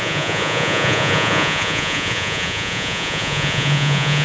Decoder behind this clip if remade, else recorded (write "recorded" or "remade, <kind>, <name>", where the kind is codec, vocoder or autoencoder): remade, vocoder, Vocos